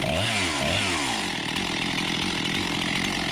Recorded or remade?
recorded